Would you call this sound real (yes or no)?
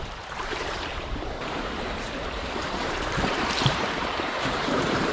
no